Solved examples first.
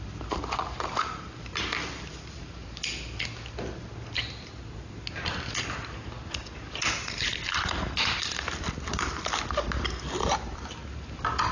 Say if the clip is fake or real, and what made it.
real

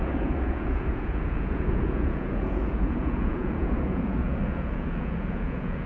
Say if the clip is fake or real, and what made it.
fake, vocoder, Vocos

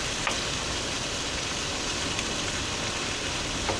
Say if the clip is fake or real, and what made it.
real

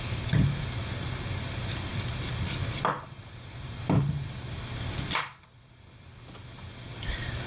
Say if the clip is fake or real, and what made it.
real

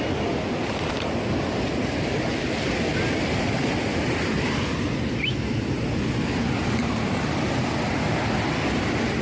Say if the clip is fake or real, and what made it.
real